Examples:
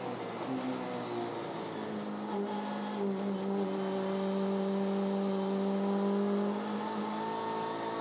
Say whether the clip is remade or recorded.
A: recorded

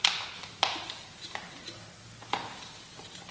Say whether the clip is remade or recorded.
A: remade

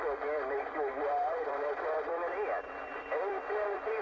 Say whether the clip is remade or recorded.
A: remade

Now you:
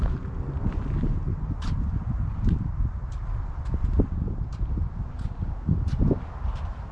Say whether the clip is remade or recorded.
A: recorded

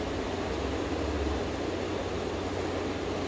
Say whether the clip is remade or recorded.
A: recorded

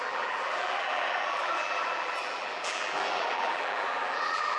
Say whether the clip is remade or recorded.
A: remade